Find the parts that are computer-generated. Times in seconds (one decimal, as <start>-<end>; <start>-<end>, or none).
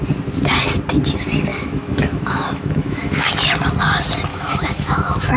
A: 1.5-3.3; 4.3-5.4